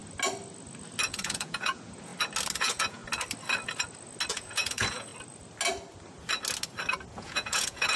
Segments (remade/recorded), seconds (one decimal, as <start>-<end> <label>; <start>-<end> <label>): 0.0-1.1 recorded; 1.1-2.1 remade; 2.1-2.6 recorded; 2.6-3.0 remade; 3.0-4.3 recorded; 4.3-5.1 remade; 5.1-7.1 recorded; 7.1-8.0 remade